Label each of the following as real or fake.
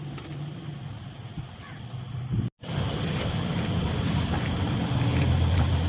real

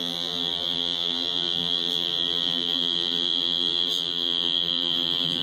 fake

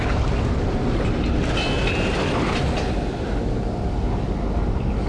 real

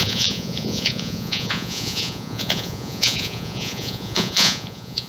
fake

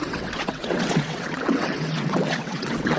fake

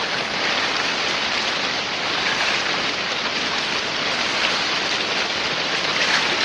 fake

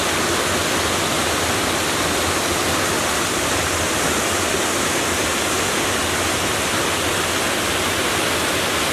real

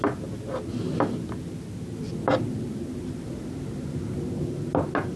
real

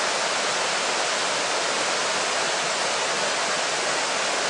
real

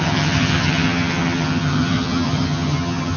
fake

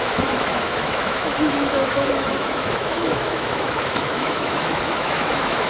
fake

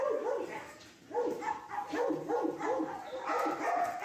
real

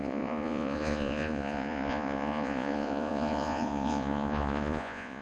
fake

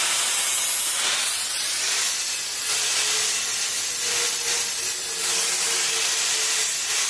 real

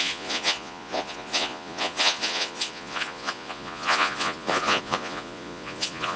fake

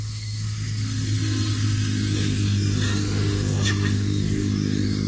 fake